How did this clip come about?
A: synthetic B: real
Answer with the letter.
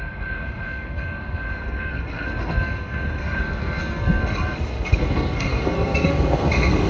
A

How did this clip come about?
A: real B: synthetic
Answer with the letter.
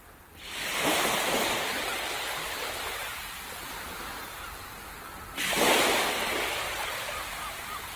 A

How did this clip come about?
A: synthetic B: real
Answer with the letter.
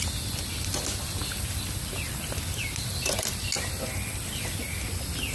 B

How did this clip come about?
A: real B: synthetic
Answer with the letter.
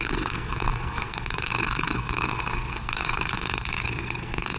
B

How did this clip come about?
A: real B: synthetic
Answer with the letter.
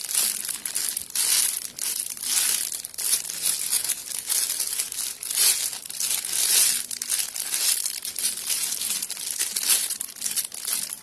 A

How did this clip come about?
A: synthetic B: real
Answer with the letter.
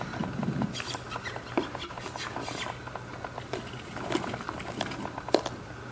B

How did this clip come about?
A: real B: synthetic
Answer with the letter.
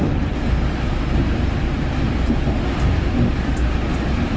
A